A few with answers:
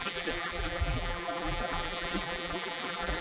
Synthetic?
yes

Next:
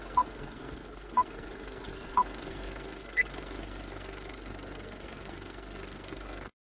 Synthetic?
yes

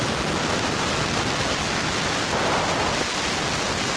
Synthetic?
no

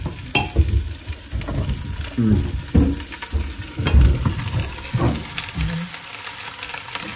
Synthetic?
no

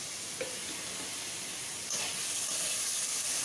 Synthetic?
no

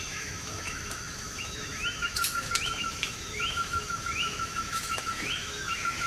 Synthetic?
yes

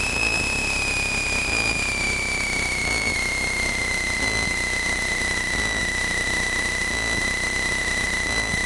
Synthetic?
no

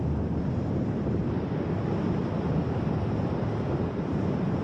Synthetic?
no